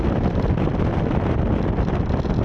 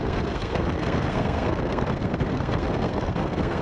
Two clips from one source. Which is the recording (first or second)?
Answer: first